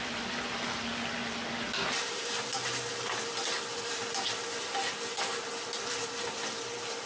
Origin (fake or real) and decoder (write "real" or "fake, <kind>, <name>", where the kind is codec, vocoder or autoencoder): real